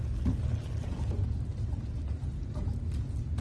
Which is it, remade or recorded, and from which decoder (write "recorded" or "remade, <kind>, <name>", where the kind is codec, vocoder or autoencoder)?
recorded